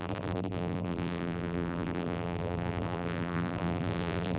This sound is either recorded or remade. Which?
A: remade